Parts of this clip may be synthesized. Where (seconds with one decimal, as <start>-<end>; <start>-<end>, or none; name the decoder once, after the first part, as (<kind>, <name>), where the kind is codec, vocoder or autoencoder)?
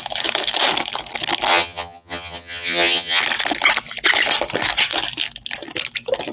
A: 1.5-3.2 (vocoder, HiFi-GAN)